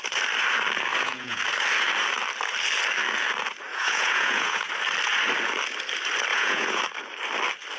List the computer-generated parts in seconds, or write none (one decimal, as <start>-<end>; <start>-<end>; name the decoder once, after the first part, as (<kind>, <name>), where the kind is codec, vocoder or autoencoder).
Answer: 0.9-1.4 (vocoder, Vocos); 3.7-4.7; 6.3-6.8